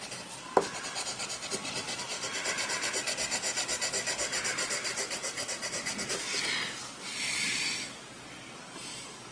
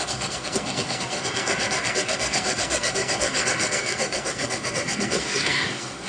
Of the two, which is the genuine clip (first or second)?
first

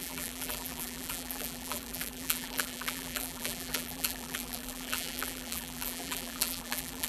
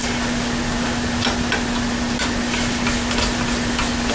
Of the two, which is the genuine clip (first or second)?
second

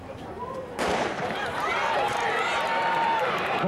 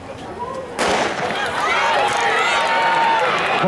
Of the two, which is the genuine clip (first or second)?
second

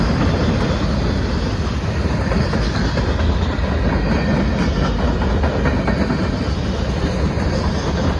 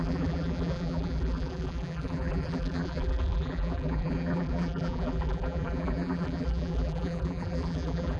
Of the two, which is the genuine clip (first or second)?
first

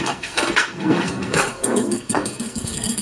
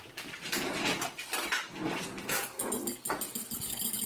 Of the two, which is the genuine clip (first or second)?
second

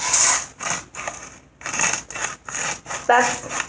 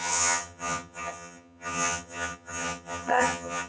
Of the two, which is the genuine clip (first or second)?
first